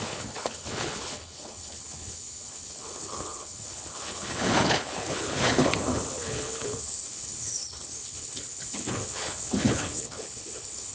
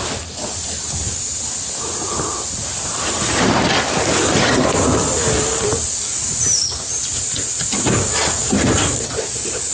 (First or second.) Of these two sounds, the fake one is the first